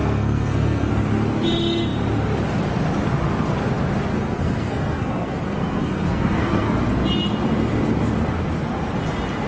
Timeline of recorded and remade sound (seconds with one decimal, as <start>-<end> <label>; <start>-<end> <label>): 0.0-0.9 remade; 0.9-4.1 recorded; 4.1-6.8 remade; 6.8-9.5 recorded